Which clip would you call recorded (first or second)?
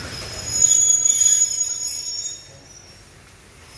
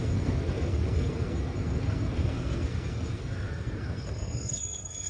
first